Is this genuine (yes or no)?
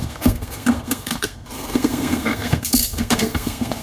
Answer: no